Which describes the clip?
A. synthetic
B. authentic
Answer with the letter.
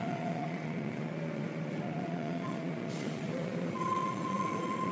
A